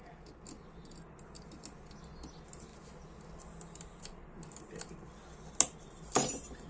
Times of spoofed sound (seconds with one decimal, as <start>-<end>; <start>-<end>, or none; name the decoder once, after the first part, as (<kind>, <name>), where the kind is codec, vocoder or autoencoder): none